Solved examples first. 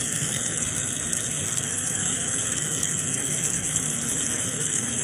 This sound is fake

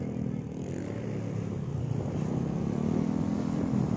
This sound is real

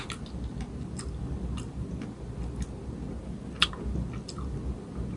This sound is real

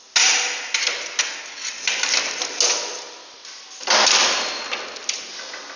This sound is real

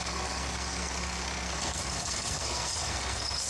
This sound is fake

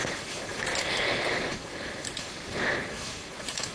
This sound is real